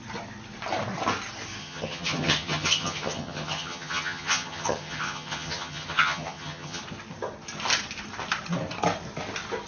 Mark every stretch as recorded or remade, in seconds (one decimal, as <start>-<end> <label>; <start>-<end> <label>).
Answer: 0.0-1.6 recorded; 1.6-6.8 remade; 6.8-9.7 recorded